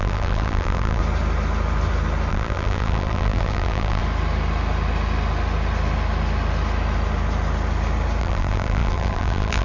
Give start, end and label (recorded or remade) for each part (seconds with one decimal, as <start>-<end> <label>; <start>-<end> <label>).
0.0-1.0 remade; 1.0-2.3 recorded; 2.3-4.0 remade; 4.0-8.2 recorded; 8.2-9.6 remade